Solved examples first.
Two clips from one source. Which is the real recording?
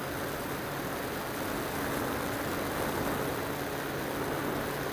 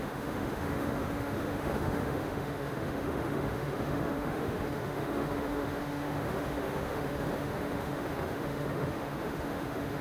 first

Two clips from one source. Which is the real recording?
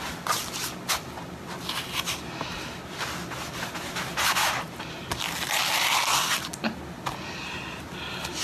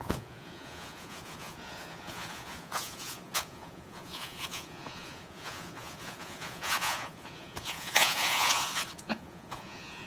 first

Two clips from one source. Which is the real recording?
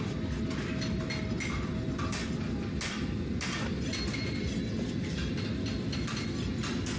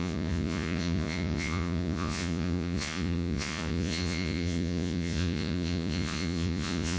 first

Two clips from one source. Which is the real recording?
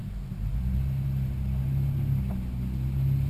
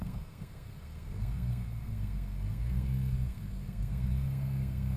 first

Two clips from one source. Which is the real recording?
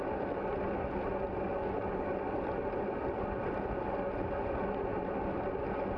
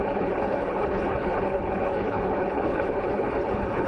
first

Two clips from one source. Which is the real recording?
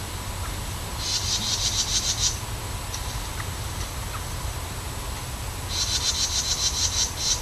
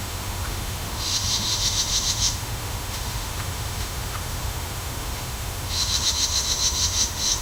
first